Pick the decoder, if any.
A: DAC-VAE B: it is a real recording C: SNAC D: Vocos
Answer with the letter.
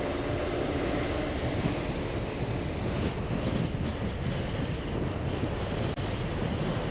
B